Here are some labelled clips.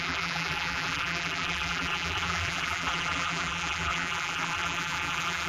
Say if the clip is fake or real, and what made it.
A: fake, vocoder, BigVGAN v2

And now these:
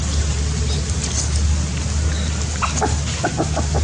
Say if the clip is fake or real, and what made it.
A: real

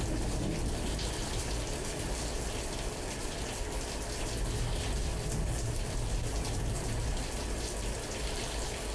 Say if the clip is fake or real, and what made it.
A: fake, vocoder, BigVGAN v2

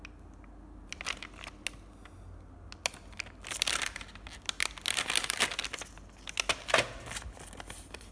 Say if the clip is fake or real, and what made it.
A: real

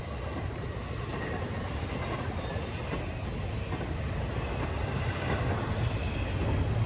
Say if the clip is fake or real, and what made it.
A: real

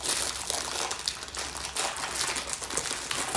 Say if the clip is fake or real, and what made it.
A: real